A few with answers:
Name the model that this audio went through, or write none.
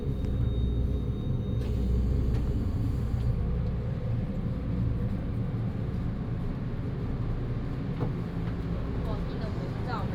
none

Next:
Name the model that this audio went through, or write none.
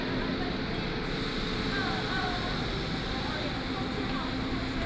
none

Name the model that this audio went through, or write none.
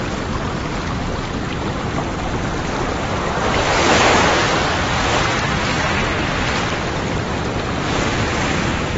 none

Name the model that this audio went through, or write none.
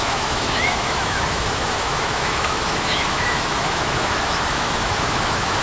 autoencoder, DAC-VAE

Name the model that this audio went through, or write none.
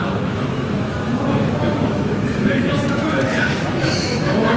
autoencoder, DAC-VAE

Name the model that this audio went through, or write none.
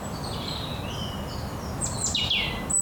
none